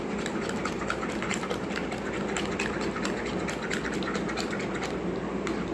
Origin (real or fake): real